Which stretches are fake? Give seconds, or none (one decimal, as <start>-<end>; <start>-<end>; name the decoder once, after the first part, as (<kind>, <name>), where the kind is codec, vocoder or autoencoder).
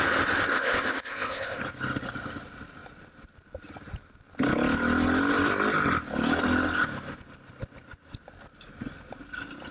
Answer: 0.5-1.6 (codec, ZipCodec)